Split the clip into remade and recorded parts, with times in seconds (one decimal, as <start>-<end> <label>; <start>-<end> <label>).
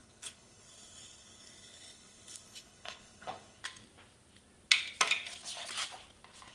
0.0-3.6 remade; 3.6-6.5 recorded